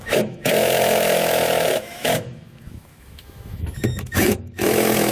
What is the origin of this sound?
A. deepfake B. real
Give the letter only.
A